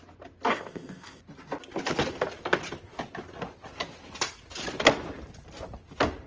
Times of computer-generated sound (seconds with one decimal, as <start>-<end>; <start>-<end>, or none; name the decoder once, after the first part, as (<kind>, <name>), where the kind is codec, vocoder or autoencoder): 0.5-1.2 (codec, ZipCodec)